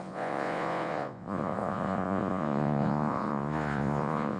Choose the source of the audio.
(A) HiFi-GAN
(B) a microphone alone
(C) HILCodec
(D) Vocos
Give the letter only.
D